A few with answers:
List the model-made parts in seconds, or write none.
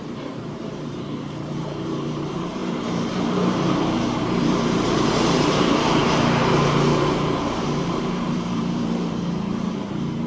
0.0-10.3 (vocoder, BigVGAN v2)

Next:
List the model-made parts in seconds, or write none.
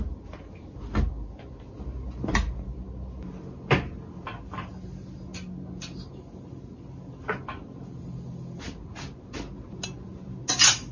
none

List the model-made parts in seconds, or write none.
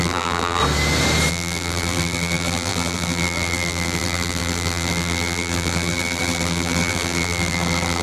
0.0-0.6 (vocoder, BigVGAN v2); 1.3-8.0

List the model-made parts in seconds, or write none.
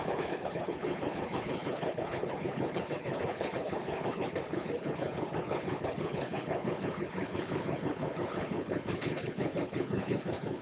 0.0-10.6 (codec, HILCodec)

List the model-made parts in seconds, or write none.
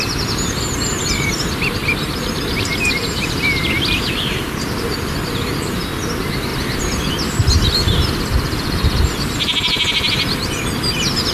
1.8-4.4 (vocoder, BigVGAN v2); 6.5-7.1